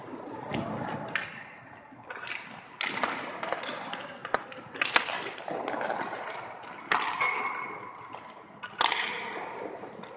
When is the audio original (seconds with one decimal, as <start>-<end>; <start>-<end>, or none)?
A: 0.0-4.2; 4.9-10.2